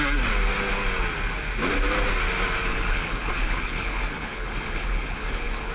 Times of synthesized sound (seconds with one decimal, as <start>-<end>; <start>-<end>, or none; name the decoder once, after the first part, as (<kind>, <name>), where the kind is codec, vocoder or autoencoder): 2.7-5.7 (codec, HILCodec)